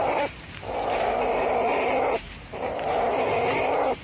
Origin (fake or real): fake